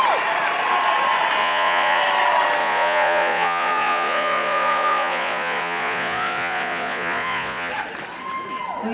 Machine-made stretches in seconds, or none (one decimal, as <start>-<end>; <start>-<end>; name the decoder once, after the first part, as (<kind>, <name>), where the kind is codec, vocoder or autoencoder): 1.4-2.0 (vocoder, Vocos); 2.6-7.7